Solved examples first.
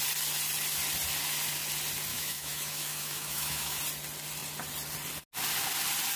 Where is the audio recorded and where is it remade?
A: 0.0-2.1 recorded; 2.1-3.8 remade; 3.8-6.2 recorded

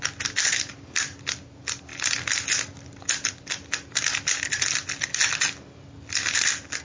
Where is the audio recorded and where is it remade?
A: 0.0-6.8 recorded

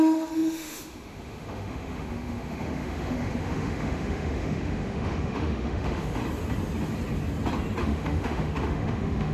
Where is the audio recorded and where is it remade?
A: 0.0-6.2 remade; 6.2-7.8 recorded; 7.8-9.3 remade

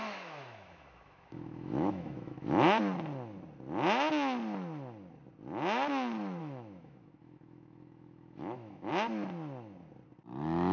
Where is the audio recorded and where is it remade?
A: 0.0-2.8 remade; 2.8-6.4 recorded; 6.4-8.9 remade; 8.9-10.7 recorded

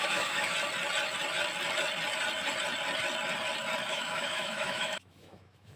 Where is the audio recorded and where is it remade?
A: 0.0-0.5 remade; 0.5-3.9 recorded; 3.9-5.8 remade

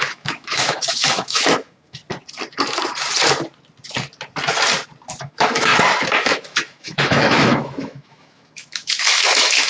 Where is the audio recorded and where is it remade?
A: 0.0-2.0 remade; 2.0-5.2 recorded; 5.2-5.7 remade; 5.7-6.2 recorded; 6.2-9.7 remade

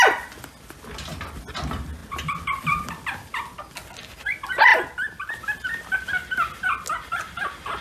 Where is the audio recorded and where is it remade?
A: 0.0-7.8 recorded